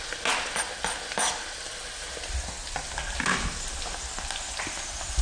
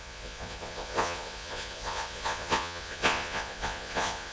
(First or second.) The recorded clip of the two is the first